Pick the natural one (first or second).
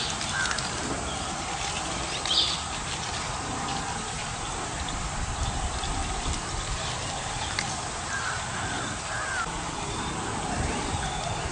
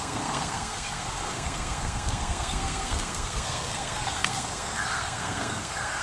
first